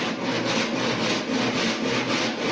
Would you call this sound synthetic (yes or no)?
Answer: no